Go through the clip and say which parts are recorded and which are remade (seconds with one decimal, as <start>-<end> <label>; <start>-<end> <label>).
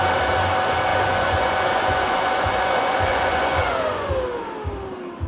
0.0-0.9 recorded; 0.9-4.1 remade; 4.1-5.3 recorded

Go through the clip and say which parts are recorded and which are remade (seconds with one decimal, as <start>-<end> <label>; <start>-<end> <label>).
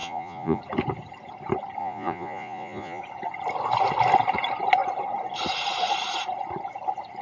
0.0-0.6 remade; 0.6-1.8 recorded; 1.8-3.0 remade; 3.0-7.2 recorded